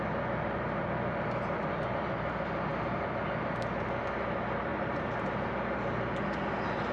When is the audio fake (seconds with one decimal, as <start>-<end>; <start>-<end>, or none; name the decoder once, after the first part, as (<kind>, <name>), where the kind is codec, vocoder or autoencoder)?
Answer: 4.7-5.5 (vocoder, BigVGAN v2)